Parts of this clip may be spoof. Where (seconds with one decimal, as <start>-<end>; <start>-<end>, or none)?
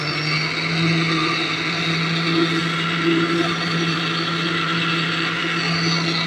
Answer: 1.2-1.8; 2.6-5.4